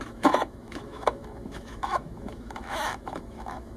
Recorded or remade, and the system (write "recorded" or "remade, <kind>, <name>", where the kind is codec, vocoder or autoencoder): remade, autoencoder, DAC-VAE